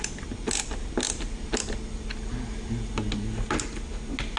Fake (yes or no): no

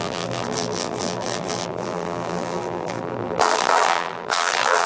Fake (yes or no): yes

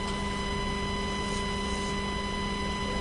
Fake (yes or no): no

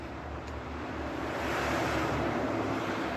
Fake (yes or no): yes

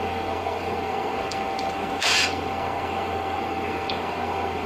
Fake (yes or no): yes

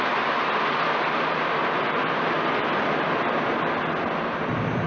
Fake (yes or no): no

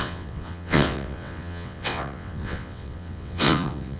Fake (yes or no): yes